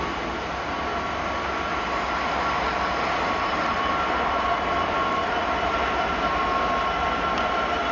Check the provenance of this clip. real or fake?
real